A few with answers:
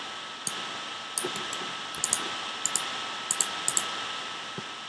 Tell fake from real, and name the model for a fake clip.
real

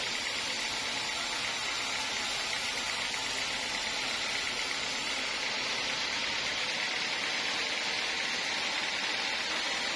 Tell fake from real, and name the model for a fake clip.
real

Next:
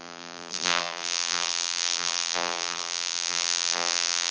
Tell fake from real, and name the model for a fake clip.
fake, vocoder, BigVGAN v2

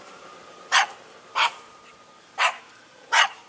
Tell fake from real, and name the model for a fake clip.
fake, vocoder, BigVGAN v2